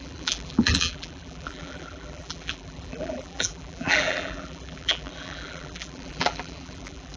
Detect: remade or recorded remade